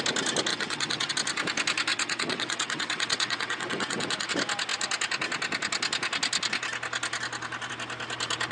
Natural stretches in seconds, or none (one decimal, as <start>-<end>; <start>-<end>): 0.0-0.5; 1.1-1.9; 4.3-8.5